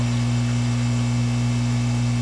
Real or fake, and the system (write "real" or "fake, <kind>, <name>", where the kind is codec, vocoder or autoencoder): real